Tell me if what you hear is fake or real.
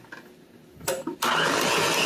real